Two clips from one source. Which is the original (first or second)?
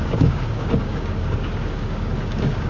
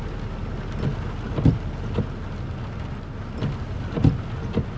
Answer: second